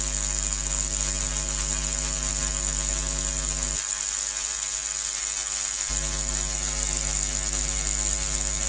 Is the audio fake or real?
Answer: real